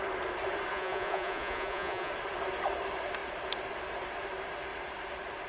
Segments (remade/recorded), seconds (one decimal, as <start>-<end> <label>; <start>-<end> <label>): 0.0-0.7 recorded; 0.7-2.1 remade; 2.1-5.5 recorded